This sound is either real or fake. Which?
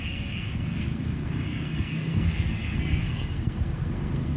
fake